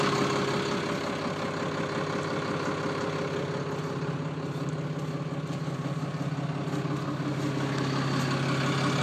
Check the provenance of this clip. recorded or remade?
recorded